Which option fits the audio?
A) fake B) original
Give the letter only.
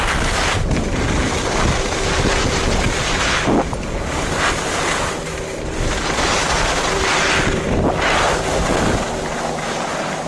B